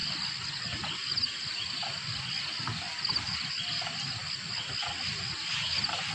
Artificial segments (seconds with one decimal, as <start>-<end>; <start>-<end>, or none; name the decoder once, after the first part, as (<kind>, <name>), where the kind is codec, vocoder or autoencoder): none